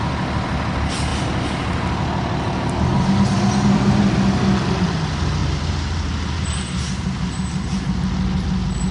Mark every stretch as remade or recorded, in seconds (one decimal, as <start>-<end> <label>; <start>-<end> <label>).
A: 0.0-5.4 recorded; 5.4-7.9 remade; 7.9-8.9 recorded